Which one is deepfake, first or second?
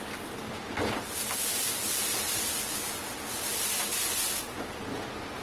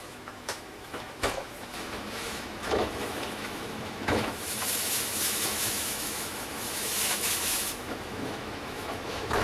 second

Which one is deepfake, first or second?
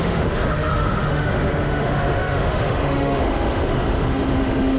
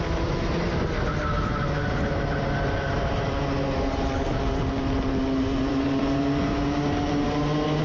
first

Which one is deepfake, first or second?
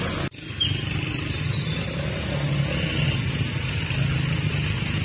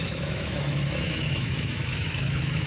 second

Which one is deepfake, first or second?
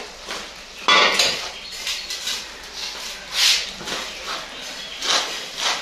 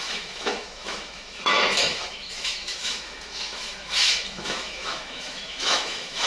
second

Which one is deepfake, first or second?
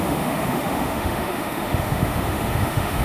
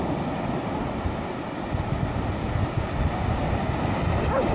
first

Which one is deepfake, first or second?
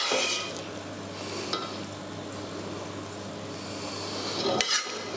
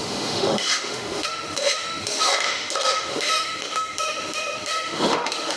second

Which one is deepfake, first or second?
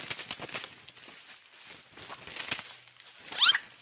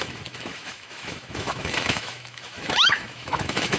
second